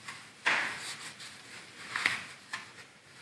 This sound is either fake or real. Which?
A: real